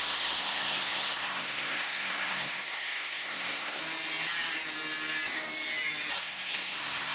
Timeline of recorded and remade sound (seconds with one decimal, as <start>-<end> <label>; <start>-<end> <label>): 0.0-3.8 remade; 3.8-6.2 recorded; 6.2-7.1 remade